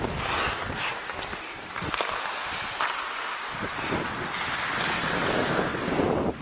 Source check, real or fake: real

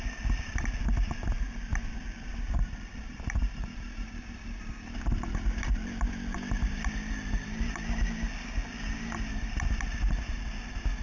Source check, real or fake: real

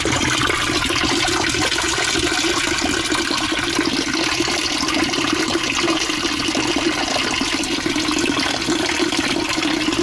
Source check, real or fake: real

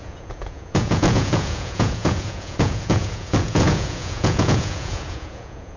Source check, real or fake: fake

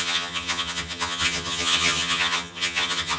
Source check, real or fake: fake